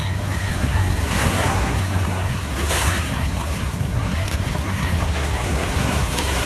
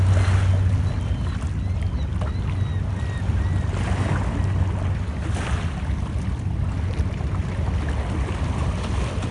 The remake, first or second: first